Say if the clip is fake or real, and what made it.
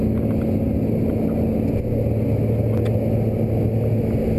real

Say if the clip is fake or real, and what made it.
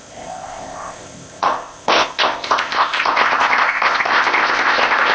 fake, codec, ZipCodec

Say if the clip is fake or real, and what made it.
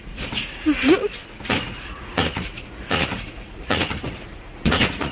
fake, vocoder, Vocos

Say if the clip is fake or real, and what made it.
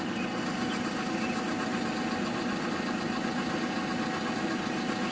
real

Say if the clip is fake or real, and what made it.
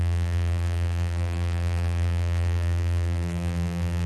fake, vocoder, BigVGAN v2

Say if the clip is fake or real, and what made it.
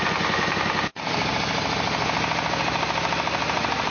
real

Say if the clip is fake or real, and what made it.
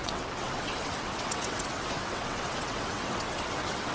fake, vocoder, WaveNeXt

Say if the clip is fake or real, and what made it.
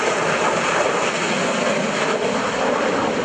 real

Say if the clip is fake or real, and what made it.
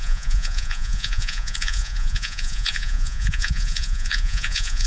fake, vocoder, Vocos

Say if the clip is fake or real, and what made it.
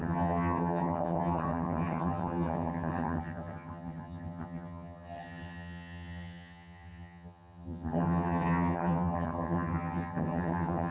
fake, vocoder, HiFi-GAN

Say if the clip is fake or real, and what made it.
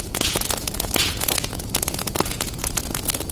fake, vocoder, Vocos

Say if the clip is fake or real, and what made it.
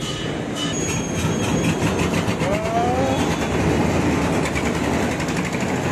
real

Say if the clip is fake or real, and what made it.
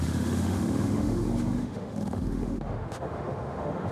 fake, autoencoder, DAC-VAE